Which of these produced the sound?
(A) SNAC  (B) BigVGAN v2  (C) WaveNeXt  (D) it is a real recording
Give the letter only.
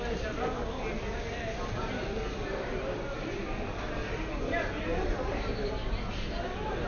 D